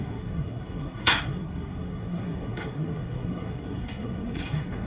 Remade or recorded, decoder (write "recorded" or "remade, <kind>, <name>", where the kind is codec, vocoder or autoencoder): remade, codec, SNAC